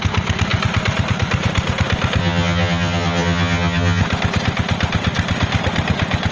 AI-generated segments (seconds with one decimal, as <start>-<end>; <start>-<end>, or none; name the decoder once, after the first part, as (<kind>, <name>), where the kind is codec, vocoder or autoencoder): 2.2-4.0 (vocoder, HiFi-GAN)